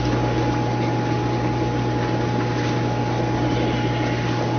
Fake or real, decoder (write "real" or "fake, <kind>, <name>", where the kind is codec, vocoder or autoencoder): real